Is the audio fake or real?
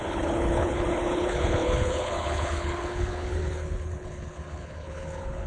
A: fake